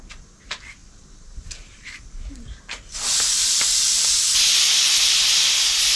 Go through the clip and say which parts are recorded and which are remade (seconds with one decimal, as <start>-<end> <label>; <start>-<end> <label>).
0.0-0.8 recorded; 0.8-2.6 remade; 2.6-3.4 recorded; 3.4-4.1 remade; 4.1-6.0 recorded